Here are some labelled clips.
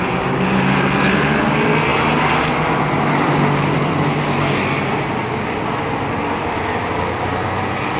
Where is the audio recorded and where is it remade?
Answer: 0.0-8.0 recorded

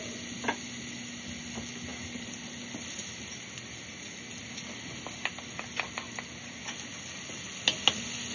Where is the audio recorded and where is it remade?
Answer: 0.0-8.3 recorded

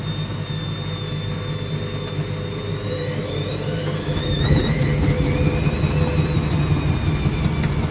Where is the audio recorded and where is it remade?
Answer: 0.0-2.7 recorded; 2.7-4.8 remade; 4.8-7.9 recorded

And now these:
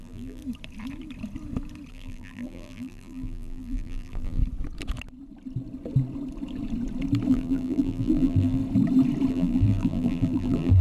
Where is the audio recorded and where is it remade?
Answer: 0.0-0.4 remade; 0.4-1.9 recorded; 1.9-4.4 remade; 4.4-7.3 recorded; 7.3-8.6 remade; 8.6-9.3 recorded; 9.3-10.8 remade

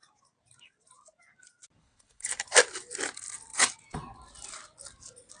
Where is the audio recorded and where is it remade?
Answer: 0.0-1.8 recorded; 1.8-2.5 remade; 2.5-5.4 recorded